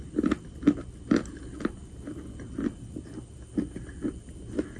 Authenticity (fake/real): real